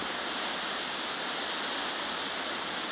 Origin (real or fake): real